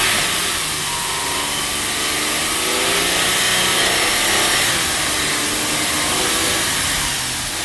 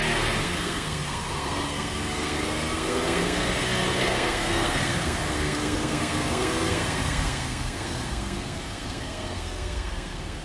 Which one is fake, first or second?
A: second